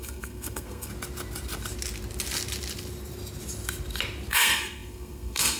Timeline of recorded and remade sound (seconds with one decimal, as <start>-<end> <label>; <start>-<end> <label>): 0.0-0.9 remade; 0.9-4.3 recorded; 4.3-5.6 remade

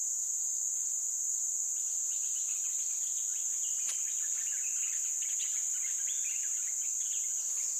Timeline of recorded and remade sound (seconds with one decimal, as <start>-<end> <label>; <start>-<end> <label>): 0.0-7.8 recorded